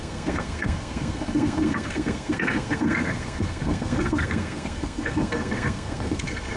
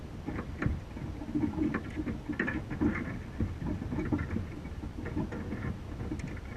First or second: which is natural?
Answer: second